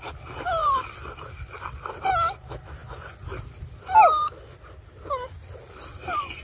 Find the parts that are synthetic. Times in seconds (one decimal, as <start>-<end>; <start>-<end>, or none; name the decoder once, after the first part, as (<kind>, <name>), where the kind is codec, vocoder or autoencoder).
none